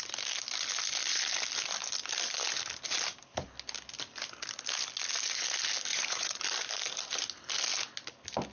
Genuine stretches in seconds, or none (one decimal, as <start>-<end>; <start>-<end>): 0.0-5.9; 6.4-8.5